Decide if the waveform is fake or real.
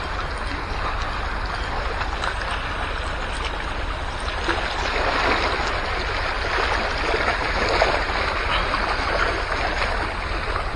real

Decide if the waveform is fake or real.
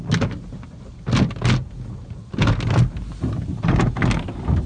real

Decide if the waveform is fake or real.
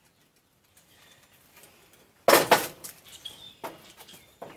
real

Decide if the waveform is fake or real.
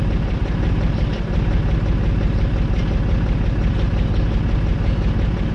real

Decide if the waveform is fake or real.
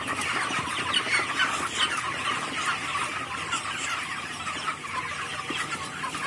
real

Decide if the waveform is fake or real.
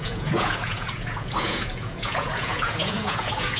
fake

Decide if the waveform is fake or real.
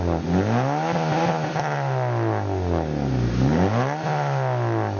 real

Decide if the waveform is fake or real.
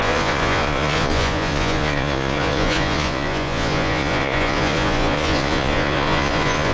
fake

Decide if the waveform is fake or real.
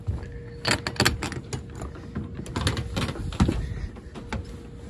real